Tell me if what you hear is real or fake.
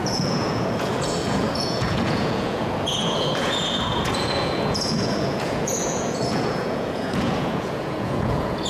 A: fake